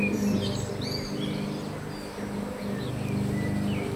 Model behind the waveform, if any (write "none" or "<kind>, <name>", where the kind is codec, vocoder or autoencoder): none